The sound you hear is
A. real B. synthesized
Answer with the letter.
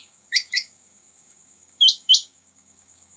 B